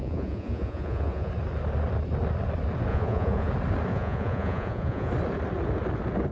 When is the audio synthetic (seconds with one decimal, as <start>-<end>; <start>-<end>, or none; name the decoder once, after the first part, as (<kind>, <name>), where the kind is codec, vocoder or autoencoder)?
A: 0.0-1.3 (vocoder, Vocos); 2.9-3.5; 3.9-5.1